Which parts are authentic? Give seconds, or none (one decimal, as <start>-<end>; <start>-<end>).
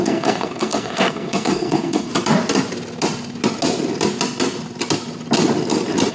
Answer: 2.1-6.1